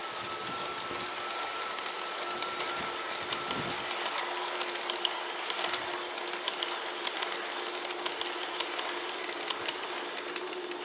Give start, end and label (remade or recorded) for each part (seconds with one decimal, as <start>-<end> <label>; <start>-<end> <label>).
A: 0.0-10.8 recorded